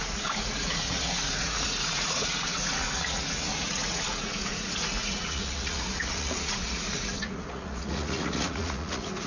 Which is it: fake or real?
fake